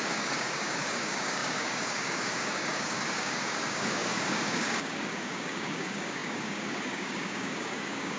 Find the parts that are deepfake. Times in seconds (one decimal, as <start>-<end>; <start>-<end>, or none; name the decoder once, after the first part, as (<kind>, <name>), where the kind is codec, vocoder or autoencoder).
0.0-8.2 (codec, DAC)